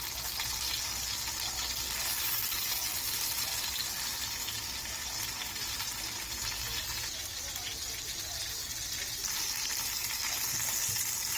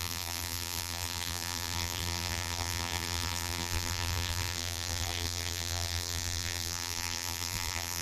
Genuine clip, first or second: first